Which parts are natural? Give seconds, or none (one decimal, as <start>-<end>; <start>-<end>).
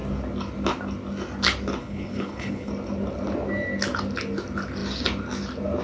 0.0-1.8; 2.7-5.8